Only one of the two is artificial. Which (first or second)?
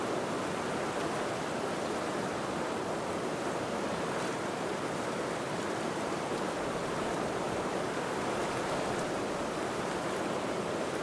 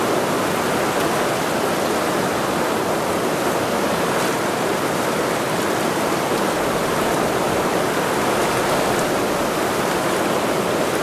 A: first